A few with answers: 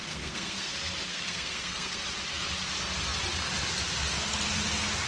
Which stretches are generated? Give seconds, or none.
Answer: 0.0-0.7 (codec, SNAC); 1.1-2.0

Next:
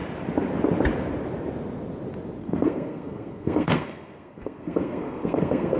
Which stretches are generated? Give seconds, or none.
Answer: 2.4-5.8 (codec, SNAC)